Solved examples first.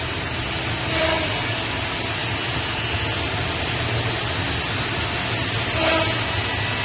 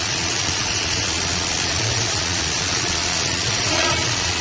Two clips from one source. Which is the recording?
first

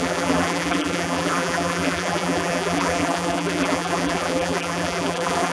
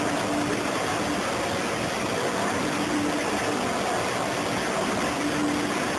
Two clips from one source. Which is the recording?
second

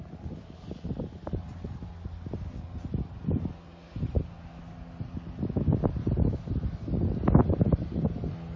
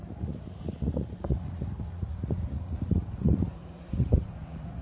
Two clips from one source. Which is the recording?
first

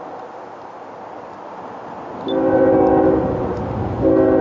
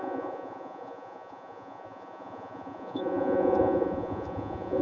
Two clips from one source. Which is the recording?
first